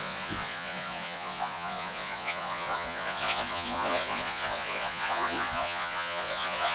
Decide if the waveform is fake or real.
fake